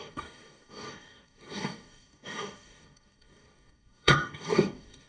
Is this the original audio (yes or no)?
no